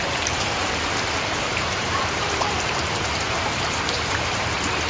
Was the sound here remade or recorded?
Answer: remade